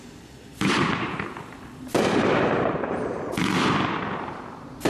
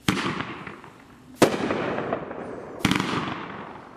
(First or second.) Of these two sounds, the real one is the second